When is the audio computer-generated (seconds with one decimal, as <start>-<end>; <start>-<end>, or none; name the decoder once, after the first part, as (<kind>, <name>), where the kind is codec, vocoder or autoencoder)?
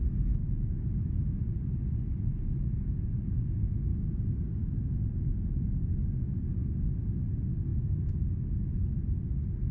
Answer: none